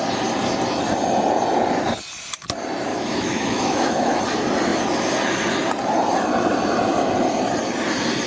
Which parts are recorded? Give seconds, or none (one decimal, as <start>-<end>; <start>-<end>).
0.0-2.9; 4.2-8.3